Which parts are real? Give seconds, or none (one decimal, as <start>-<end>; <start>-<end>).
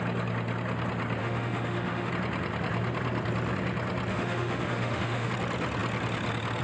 0.0-1.2; 2.1-4.1; 5.3-6.6